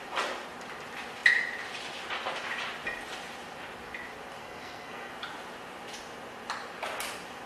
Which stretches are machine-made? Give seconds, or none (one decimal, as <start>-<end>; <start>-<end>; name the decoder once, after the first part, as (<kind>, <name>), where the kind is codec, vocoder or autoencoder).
4.4-5.1 (codec, SNAC)